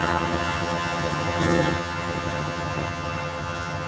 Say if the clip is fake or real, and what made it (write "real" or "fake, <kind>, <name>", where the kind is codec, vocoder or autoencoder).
fake, vocoder, HiFi-GAN